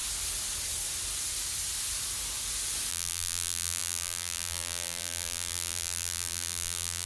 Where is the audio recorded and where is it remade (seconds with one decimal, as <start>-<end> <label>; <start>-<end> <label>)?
0.0-2.9 recorded; 2.9-7.1 remade